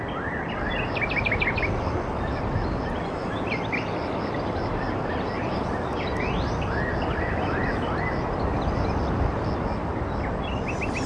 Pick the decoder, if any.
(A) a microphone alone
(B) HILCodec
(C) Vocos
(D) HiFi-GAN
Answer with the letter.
A